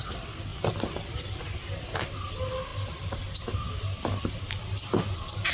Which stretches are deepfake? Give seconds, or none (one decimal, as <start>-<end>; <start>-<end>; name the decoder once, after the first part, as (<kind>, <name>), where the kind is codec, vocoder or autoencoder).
none